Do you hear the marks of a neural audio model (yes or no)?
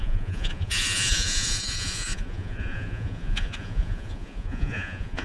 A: yes